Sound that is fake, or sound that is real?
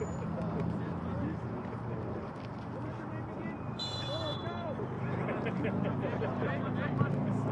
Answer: fake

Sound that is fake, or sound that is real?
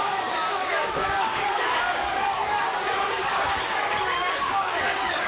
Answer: fake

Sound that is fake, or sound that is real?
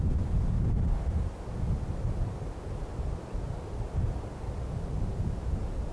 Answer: real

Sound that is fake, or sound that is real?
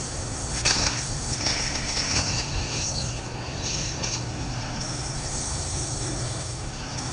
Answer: fake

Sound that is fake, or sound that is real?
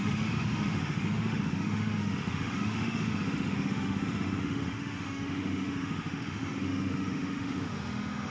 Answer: fake